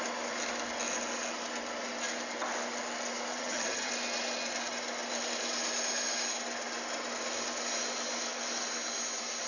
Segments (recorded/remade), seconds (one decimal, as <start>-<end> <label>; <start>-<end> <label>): 0.0-3.3 recorded; 3.3-3.9 remade; 3.9-9.5 recorded

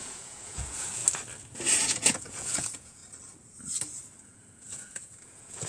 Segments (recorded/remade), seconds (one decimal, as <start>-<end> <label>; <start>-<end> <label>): 0.0-1.0 remade; 1.0-1.8 recorded; 1.8-3.0 remade; 3.0-4.2 recorded; 4.2-5.7 remade

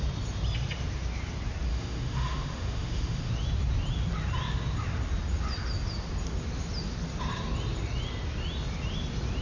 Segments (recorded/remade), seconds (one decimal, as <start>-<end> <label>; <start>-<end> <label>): 0.0-1.7 recorded; 1.7-3.3 remade; 3.3-9.4 recorded

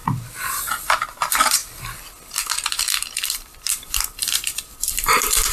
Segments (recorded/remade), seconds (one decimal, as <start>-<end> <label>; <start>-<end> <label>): 0.0-5.5 remade

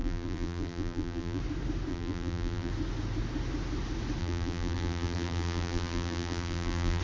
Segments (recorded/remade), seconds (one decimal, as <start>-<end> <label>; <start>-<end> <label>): 0.0-1.4 remade; 1.4-1.9 recorded; 1.9-2.7 remade; 2.7-4.2 recorded; 4.2-7.0 remade

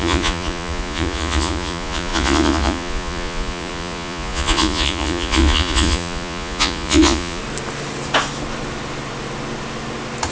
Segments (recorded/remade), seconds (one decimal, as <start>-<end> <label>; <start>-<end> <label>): 0.0-7.4 remade; 7.4-10.3 recorded